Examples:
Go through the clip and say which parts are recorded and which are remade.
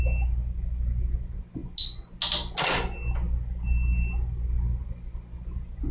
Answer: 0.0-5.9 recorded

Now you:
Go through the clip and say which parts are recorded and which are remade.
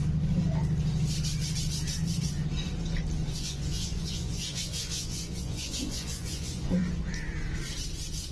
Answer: 0.0-3.4 recorded; 3.4-6.8 remade; 6.8-8.3 recorded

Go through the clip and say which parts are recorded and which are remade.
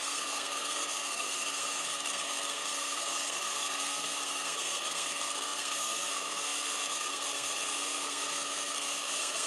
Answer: 0.0-9.5 remade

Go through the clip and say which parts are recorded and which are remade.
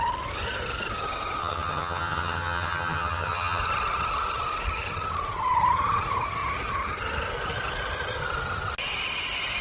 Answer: 0.0-1.4 recorded; 1.4-3.6 remade; 3.6-9.6 recorded